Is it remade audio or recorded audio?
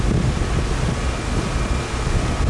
recorded